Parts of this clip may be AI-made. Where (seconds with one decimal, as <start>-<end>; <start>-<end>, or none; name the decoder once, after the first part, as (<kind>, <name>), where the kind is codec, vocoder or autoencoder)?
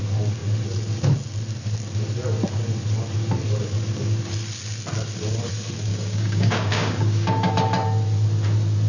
5.9-7.5 (codec, DAC)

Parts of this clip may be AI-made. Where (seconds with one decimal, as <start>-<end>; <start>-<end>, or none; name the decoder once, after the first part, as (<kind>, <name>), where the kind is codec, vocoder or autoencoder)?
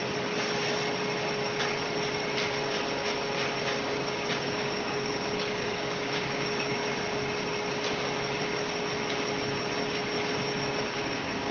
3.6-6.8 (codec, DAC); 10.8-11.5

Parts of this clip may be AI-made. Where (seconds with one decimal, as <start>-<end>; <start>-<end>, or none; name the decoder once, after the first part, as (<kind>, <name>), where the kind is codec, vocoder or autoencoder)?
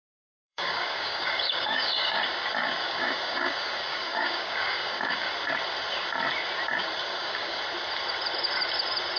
0.0-2.2 (codec, DAC); 2.8-5.3; 7.1-7.6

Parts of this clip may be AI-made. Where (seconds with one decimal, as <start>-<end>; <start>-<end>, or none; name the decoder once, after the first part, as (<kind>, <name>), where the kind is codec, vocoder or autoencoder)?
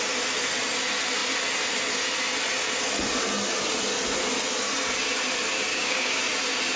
5.7-6.2 (codec, DAC)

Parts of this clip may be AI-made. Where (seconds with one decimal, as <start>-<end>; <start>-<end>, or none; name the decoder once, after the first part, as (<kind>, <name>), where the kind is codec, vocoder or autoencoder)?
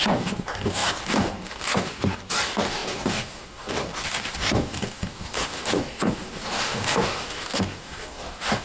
0.0-8.6 (codec, DAC)